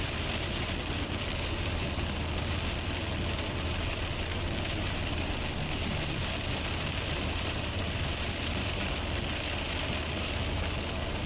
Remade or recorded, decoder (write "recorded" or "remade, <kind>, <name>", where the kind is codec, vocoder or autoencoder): recorded